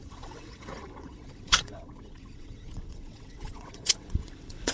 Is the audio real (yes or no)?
no